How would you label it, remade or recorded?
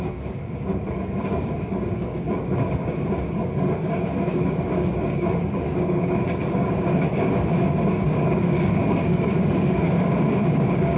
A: remade